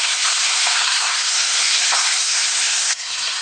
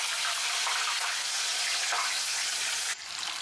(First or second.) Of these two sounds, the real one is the second